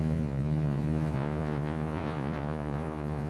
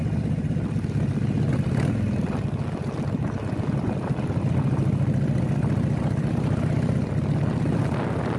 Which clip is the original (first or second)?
second